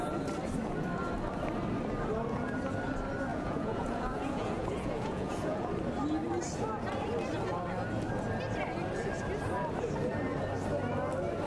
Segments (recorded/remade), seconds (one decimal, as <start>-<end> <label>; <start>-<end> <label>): 0.0-3.3 recorded; 3.3-5.7 remade; 5.7-11.5 recorded